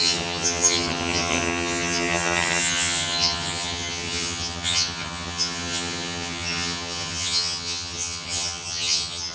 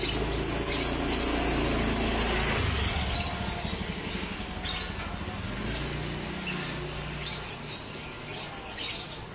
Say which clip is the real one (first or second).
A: second